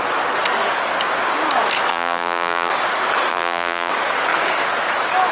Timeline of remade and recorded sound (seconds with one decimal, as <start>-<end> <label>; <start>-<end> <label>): 0.0-1.9 recorded; 1.9-2.7 remade; 2.7-3.3 recorded; 3.3-3.9 remade; 3.9-5.3 recorded